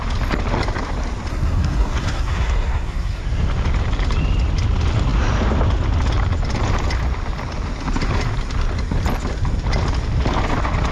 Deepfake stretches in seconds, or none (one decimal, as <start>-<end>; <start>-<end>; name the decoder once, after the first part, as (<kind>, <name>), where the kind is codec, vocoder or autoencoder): 1.3-3.2 (codec, SNAC)